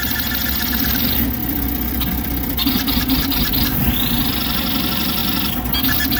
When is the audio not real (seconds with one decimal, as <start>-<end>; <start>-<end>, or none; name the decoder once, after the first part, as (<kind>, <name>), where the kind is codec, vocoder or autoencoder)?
1.4-3.5 (vocoder, BigVGAN v2)